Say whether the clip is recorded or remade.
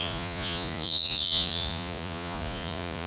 remade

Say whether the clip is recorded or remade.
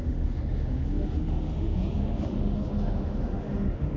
remade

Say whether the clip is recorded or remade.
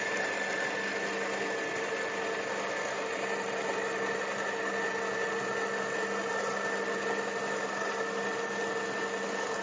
recorded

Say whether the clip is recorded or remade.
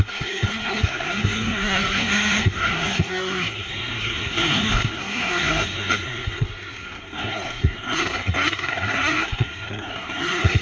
remade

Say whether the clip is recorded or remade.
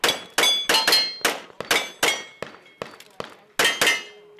recorded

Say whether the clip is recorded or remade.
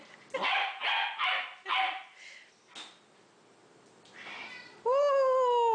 recorded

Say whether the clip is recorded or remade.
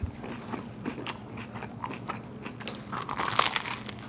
recorded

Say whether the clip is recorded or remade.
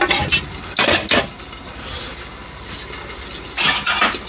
recorded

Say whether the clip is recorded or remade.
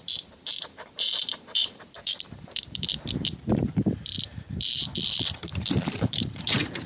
remade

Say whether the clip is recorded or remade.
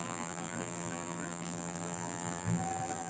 remade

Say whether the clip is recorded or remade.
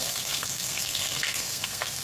remade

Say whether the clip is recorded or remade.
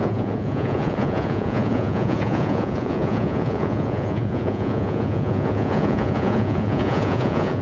remade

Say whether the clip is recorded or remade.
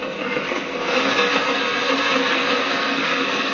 remade